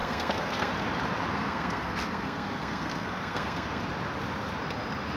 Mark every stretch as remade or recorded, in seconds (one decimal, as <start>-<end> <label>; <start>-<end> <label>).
0.0-0.7 remade; 0.7-1.3 recorded; 1.3-3.8 remade; 3.8-5.2 recorded